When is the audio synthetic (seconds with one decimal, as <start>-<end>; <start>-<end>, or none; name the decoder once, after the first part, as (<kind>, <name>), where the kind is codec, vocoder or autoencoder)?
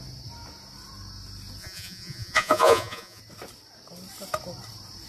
1.6-3.2 (vocoder, Vocos)